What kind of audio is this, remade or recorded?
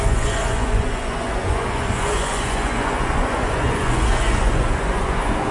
remade